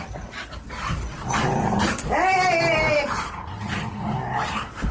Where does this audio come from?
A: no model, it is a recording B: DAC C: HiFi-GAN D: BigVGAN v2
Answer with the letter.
D